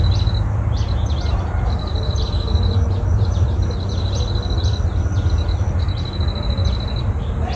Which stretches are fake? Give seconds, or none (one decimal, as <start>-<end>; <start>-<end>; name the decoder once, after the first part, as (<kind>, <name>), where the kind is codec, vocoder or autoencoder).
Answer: 1.3-4.1 (vocoder, BigVGAN v2)